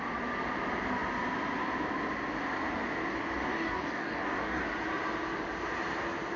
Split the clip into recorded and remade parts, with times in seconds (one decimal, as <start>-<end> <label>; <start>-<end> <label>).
0.0-3.5 recorded; 3.5-4.6 remade; 4.6-6.4 recorded